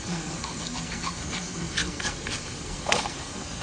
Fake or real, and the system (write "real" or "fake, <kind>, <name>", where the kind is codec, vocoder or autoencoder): fake, codec, SNAC